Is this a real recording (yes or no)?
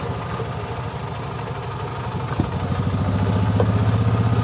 yes